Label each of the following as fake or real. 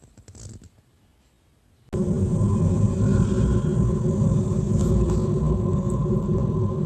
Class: real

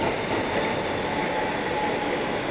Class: real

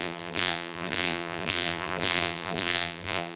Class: fake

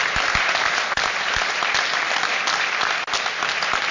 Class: real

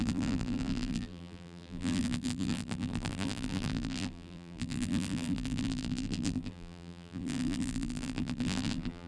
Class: fake